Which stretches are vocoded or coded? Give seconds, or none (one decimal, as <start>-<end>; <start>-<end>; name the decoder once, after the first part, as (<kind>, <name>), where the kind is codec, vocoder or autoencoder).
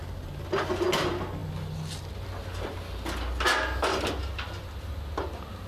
none